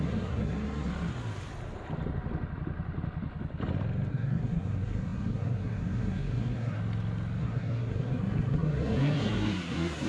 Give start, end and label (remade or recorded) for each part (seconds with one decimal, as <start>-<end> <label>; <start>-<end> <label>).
0.0-0.9 remade; 0.9-4.1 recorded; 4.1-6.8 remade; 6.8-7.4 recorded; 7.4-10.1 remade